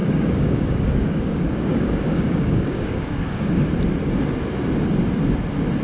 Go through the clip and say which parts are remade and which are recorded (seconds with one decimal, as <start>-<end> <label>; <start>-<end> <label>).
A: 0.0-3.5 remade; 3.5-5.8 recorded